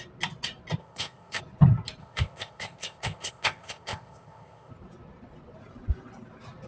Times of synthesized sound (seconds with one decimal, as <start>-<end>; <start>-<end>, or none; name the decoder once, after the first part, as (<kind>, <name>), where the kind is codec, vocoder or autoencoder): 0.8-1.4 (codec, ZipCodec); 2.0-4.7